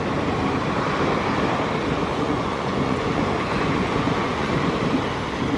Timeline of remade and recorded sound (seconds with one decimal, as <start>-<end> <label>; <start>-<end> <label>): 0.0-2.1 recorded; 2.1-4.5 remade; 4.5-5.6 recorded